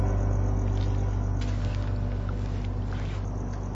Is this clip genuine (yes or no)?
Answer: yes